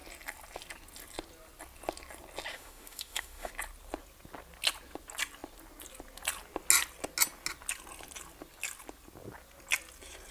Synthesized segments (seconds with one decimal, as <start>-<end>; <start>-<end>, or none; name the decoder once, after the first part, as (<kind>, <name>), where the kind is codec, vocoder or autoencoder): 2.5-3.5 (autoencoder, DAC-VAE)